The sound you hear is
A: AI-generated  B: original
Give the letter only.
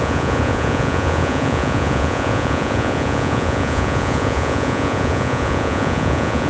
A